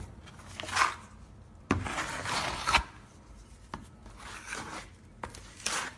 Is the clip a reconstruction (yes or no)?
no